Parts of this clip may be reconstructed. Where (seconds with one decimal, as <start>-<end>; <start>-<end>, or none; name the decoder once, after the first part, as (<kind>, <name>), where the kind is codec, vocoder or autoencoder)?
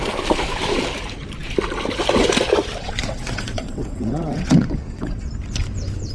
2.8-5.3 (vocoder, WaveNeXt)